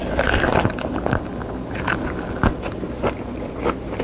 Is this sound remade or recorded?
recorded